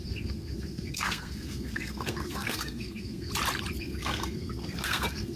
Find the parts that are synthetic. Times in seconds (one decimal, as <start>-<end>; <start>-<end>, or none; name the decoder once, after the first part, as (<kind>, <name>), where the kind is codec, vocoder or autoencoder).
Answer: 0.0-3.3 (codec, SNAC); 3.8-5.4